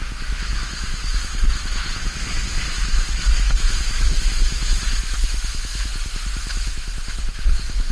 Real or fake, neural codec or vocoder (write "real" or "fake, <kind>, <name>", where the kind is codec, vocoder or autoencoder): fake, autoencoder, DAC-VAE